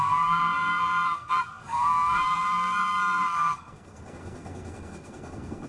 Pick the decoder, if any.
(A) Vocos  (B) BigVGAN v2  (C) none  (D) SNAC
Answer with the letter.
D